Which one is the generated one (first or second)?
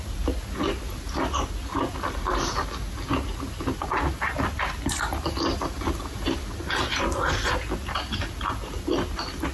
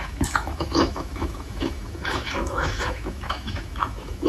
second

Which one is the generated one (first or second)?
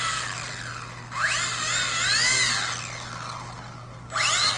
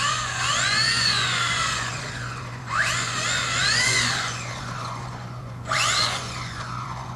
second